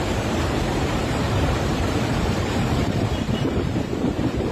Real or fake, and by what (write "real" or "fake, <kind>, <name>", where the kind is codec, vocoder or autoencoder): fake, vocoder, BigVGAN v2